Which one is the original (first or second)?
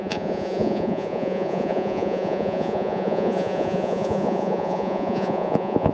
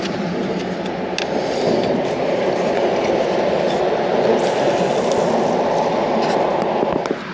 second